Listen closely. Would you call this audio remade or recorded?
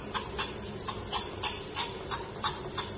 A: remade